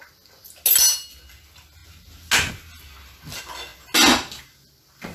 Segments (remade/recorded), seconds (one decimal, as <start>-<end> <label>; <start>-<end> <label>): 0.0-5.1 recorded